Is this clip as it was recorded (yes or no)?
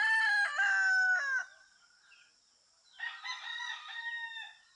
yes